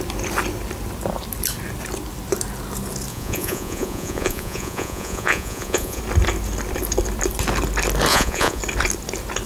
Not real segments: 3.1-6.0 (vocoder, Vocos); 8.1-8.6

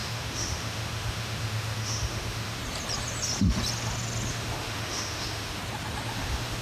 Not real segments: 0.0-2.6 (autoencoder, DAC-VAE); 4.3-5.6; 6.1-6.6

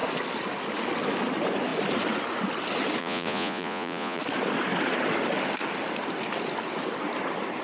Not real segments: 3.0-4.2 (vocoder, Vocos)

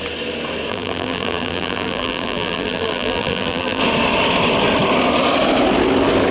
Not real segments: 0.7-3.8 (vocoder, BigVGAN v2)